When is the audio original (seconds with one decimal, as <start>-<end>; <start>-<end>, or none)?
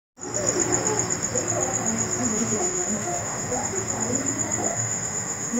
0.0-2.3; 3.6-4.7